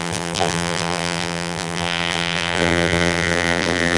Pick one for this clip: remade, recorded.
remade